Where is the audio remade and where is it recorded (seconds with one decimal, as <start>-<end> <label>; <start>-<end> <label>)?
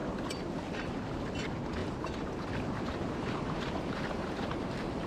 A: 0.0-1.8 recorded; 1.8-5.1 remade